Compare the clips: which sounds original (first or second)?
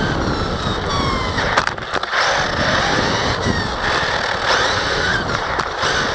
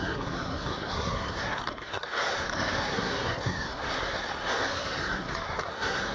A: first